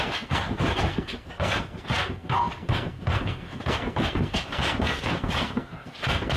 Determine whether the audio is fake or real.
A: fake